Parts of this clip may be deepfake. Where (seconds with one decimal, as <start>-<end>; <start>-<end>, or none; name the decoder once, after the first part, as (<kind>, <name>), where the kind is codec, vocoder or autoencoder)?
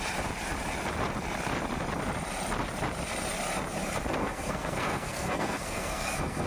4.2-6.5 (codec, SNAC)